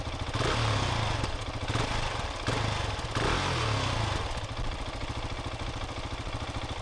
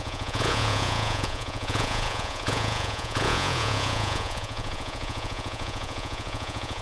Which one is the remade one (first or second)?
second